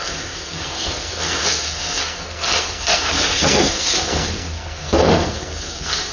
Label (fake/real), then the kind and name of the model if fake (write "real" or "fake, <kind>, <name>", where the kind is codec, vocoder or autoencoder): fake, codec, SNAC